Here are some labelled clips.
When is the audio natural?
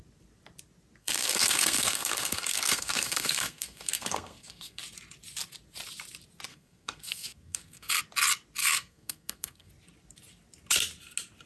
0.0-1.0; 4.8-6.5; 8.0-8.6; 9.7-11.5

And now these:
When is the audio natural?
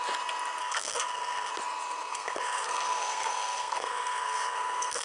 0.0-0.6; 1.5-2.1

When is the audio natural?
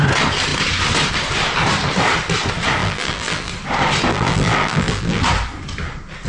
0.0-2.8; 3.5-4.1; 5.2-6.3